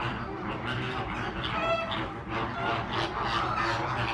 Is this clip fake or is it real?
real